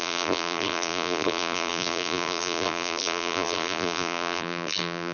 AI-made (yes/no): yes